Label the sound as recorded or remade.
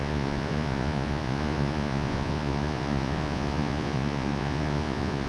remade